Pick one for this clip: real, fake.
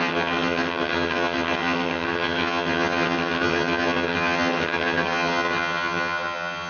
fake